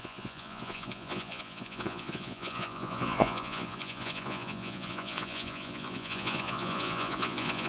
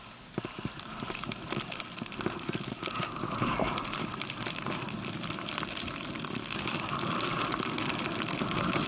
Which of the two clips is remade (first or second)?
first